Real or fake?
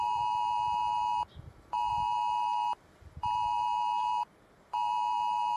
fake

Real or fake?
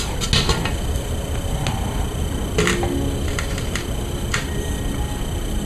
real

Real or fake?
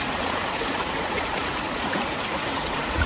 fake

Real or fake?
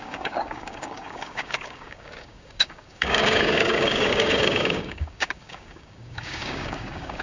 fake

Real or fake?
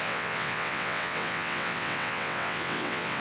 fake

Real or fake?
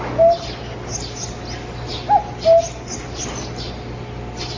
real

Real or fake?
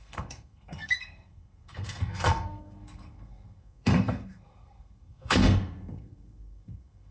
fake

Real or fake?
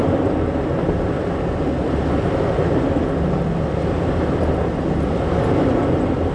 real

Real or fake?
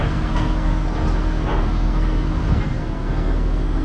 fake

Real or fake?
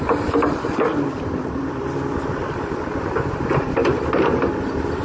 fake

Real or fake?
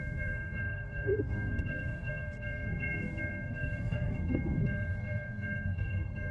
fake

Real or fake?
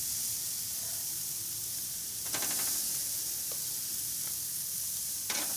real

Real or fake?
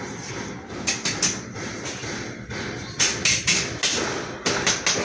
real